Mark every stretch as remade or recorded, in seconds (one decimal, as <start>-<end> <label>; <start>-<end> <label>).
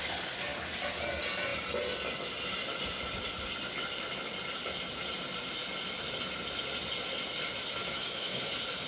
0.0-7.8 recorded; 7.8-8.5 remade; 8.5-8.9 recorded